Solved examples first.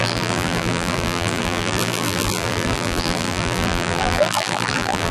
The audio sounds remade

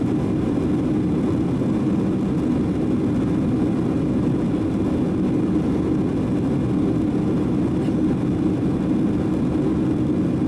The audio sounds recorded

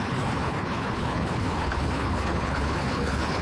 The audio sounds remade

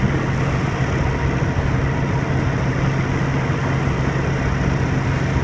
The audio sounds recorded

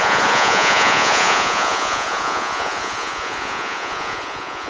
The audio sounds remade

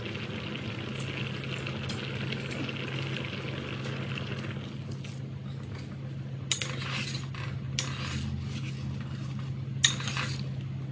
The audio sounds recorded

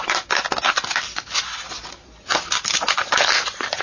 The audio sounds recorded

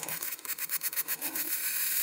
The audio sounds remade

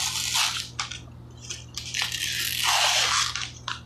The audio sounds recorded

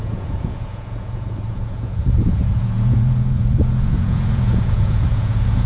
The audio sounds remade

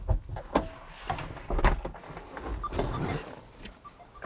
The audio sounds recorded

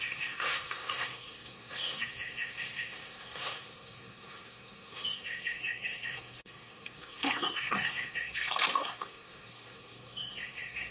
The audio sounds remade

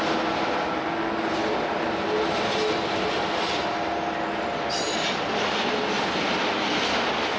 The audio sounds recorded